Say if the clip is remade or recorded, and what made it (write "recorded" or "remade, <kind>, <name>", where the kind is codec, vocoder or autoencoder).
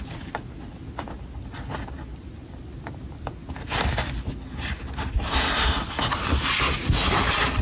recorded